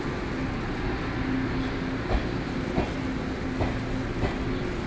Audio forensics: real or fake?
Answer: real